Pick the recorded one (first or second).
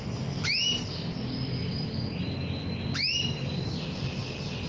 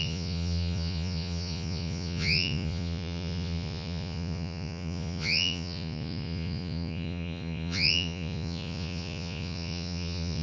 first